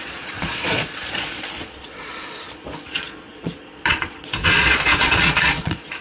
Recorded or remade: remade